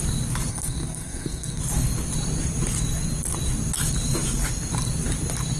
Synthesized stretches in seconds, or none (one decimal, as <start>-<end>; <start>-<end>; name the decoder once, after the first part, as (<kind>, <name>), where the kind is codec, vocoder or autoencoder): 0.5-1.6 (codec, SNAC)